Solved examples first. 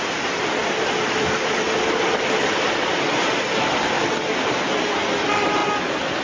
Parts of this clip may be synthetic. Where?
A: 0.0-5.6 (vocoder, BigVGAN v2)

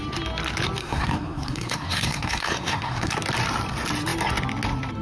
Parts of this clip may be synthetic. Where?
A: 0.8-3.1 (codec, SNAC)

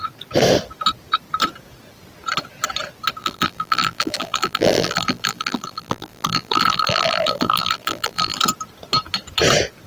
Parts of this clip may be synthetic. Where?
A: 3.2-8.4 (vocoder, BigVGAN v2)